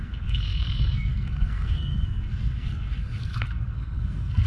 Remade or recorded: remade